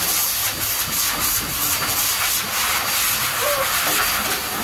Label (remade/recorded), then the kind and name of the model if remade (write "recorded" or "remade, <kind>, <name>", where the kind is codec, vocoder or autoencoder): recorded